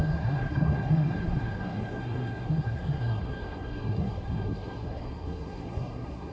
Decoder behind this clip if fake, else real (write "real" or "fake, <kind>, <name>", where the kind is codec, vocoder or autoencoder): fake, codec, SNAC